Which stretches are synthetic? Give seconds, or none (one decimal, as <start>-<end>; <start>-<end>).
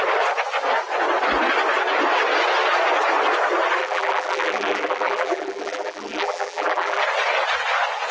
3.8-7.0